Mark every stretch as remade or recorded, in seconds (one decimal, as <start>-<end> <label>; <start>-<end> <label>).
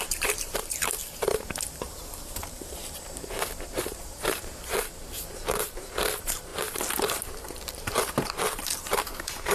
0.0-1.0 remade; 1.0-1.6 recorded; 1.6-6.5 remade; 6.5-7.0 recorded; 7.0-9.5 remade